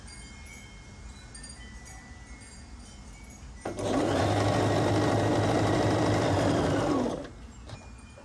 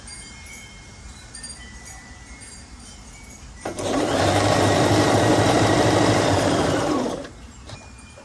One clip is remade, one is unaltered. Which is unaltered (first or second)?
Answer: first